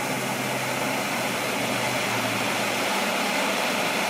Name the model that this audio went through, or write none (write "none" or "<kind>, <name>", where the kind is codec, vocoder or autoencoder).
none